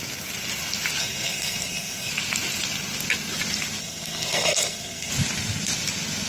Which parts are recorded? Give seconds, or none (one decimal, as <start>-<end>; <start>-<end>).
0.0-1.0; 2.1-3.8; 5.1-6.3